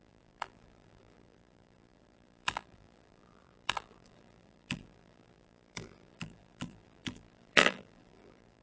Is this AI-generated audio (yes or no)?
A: yes